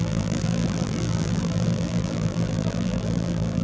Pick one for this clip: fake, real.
fake